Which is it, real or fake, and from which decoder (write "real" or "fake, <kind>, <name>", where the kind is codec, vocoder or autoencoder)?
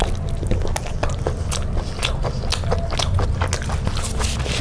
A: real